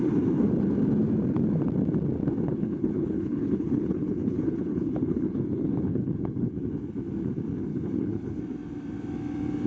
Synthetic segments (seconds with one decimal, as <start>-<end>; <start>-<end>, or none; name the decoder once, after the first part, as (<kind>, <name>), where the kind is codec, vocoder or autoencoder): 2.5-6.5 (codec, HILCodec); 7.7-8.4